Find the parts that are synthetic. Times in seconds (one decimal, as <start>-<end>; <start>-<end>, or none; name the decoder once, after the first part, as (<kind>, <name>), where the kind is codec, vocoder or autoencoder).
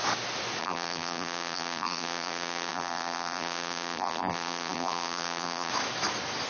0.6-5.7 (vocoder, BigVGAN v2)